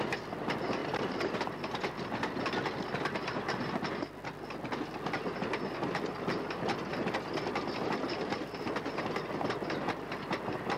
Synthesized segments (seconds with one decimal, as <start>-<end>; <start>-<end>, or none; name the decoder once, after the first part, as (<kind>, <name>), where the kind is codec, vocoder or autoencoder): 0.8-1.4 (vocoder, BigVGAN v2); 6.9-8.8